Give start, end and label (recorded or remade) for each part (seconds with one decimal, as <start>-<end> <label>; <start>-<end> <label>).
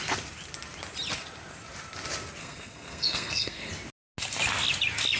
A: 0.0-2.4 recorded; 2.4-3.7 remade; 3.7-5.2 recorded